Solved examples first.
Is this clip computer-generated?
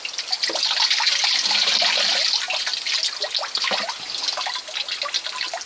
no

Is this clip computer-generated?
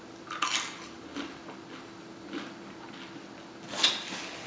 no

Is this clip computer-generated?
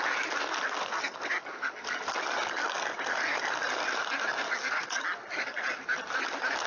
no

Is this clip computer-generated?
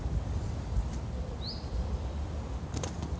no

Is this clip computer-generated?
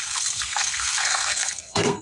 yes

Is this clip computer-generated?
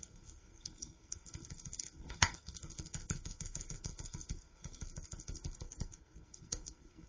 yes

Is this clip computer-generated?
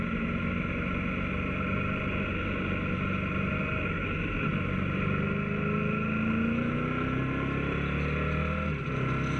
no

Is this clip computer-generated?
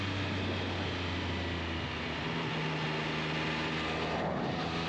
no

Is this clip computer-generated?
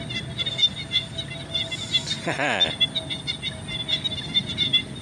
no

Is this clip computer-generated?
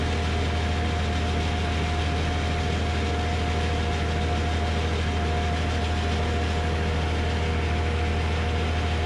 no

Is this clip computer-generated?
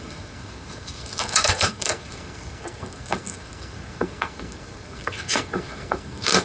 yes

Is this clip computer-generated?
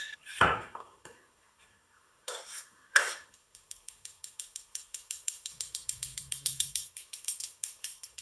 yes